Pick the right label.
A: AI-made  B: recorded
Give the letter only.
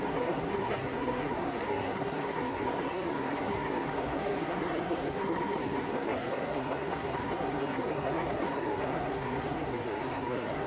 A